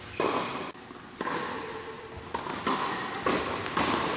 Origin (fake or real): real